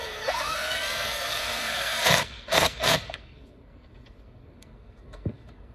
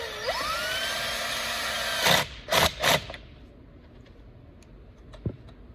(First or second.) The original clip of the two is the second